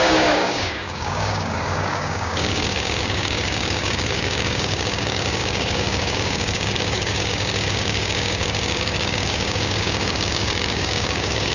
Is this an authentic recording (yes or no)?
no